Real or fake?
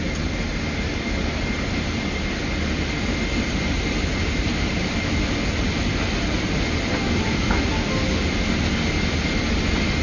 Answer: real